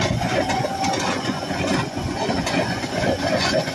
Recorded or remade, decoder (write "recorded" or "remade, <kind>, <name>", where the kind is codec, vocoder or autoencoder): remade, vocoder, Vocos